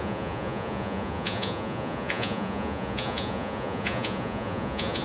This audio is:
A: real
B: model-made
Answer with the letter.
B